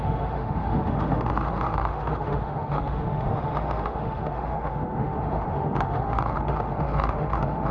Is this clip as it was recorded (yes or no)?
no